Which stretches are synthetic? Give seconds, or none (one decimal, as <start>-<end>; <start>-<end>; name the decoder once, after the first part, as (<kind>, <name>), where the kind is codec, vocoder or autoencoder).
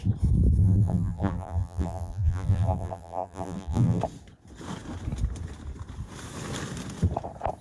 0.6-4.0 (vocoder, BigVGAN v2)